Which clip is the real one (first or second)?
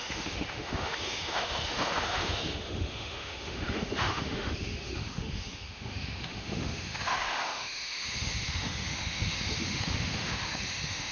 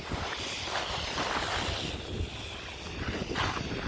second